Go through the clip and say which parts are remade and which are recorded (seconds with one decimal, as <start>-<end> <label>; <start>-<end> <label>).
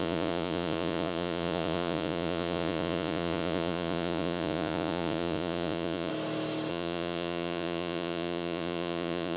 0.0-6.1 remade; 6.1-6.7 recorded; 6.7-9.4 remade